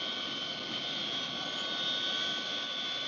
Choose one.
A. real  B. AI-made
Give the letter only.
A